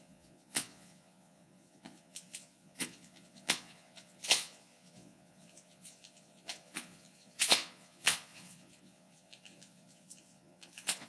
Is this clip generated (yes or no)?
yes